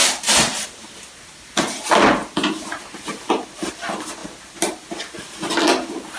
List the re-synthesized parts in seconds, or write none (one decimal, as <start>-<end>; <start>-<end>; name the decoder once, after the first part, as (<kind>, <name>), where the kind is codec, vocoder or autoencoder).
none